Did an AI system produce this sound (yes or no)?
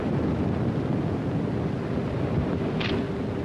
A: no